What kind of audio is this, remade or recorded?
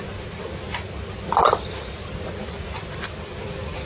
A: recorded